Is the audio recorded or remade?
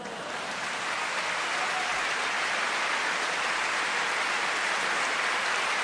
recorded